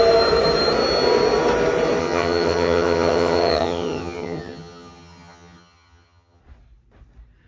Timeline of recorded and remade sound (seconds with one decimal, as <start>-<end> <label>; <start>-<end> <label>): 0.0-2.0 recorded; 2.0-6.4 remade; 6.4-7.5 recorded